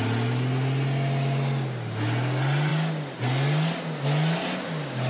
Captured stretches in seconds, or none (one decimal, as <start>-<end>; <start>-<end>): 0.0-5.1